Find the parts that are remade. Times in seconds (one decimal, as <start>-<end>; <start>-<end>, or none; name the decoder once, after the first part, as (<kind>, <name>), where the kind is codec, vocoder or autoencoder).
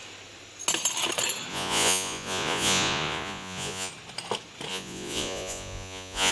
1.5-3.9 (vocoder, Vocos); 4.7-6.3